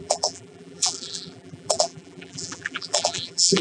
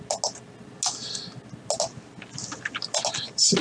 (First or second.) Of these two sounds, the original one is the second